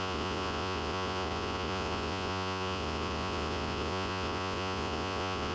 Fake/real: fake